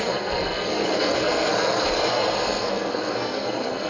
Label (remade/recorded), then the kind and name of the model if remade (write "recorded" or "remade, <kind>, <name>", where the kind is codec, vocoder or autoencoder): remade, codec, SNAC